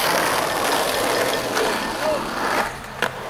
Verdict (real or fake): real